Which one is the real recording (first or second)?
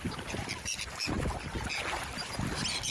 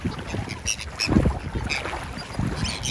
second